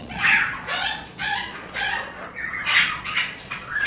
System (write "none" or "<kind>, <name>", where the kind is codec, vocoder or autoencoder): vocoder, Vocos